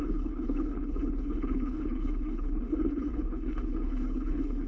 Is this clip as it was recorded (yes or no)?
no